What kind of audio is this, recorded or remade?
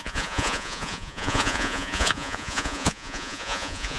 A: remade